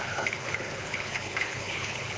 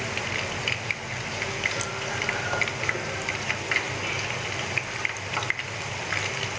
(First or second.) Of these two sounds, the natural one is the second